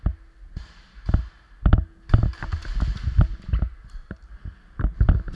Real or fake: real